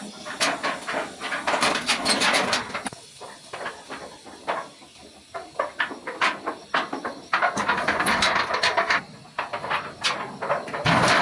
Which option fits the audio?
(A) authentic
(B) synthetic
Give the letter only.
A